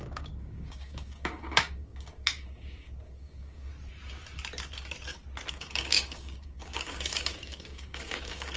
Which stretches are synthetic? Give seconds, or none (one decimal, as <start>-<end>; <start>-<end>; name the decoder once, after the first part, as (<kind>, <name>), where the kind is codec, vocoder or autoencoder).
0.0-3.7 (codec, DAC); 5.5-8.6